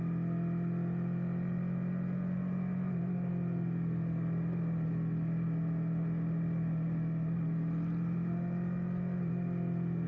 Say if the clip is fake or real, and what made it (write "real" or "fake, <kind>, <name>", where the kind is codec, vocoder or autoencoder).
real